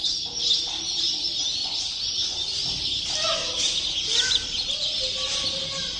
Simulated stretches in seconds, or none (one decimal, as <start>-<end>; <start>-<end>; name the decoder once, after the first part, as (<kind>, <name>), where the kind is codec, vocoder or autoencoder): 1.6-2.5 (vocoder, Vocos)